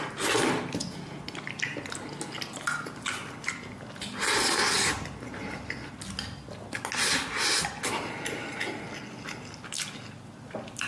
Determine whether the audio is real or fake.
real